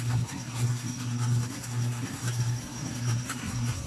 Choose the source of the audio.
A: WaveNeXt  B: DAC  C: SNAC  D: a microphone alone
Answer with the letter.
C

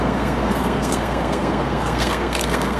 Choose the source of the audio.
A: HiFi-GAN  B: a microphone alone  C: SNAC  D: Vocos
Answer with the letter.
C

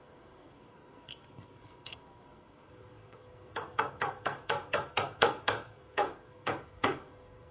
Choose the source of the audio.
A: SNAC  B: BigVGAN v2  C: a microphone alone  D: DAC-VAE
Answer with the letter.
A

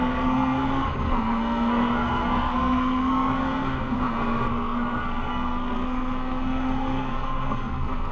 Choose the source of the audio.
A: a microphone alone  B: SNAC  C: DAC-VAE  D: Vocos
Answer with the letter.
B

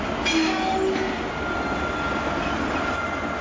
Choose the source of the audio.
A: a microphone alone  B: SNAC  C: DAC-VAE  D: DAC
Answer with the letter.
A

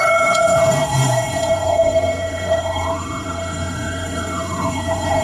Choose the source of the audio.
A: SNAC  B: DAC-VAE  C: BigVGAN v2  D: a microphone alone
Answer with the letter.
A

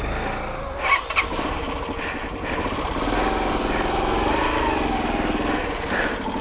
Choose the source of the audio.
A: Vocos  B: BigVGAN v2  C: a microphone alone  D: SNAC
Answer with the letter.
C